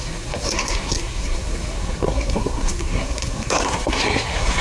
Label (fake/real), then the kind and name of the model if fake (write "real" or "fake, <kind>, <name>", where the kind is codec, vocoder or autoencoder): fake, codec, SNAC